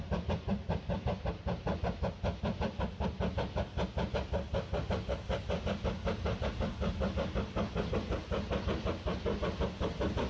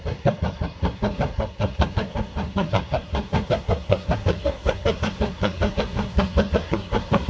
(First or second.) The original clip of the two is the first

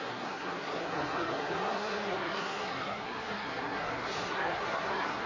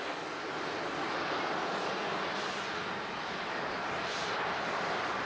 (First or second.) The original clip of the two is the second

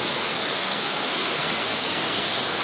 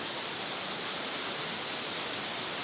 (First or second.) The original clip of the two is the second